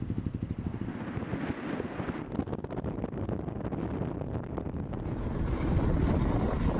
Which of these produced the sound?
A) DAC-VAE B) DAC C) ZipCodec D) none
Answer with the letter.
D